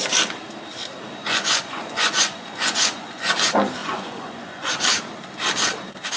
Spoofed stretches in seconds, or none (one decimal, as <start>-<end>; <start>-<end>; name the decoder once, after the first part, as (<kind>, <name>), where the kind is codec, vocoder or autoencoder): 1.2-3.3 (vocoder, Vocos); 3.8-4.7